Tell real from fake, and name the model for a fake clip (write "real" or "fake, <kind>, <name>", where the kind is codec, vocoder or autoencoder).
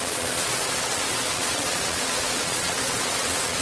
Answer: fake, vocoder, Vocos